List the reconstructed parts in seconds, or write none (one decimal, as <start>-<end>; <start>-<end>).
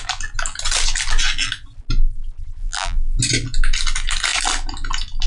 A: 2.6-3.2